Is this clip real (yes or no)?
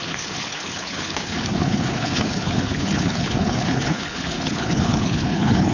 no